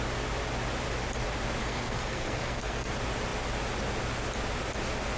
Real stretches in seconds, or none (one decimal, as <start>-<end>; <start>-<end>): 0.0-1.6; 2.9-5.2